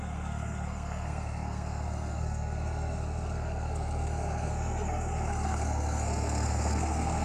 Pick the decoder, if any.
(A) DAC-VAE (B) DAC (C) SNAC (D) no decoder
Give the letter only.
C